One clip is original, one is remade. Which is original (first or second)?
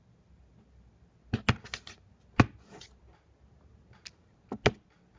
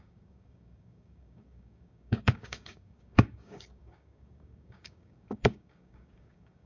first